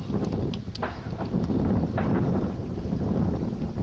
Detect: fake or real fake